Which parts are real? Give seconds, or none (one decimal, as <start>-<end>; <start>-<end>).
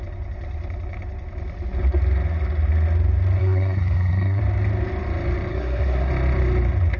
0.0-3.4; 4.4-5.5; 6.1-7.0